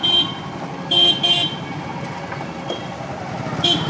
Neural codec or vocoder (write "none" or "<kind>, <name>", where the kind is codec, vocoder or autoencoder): none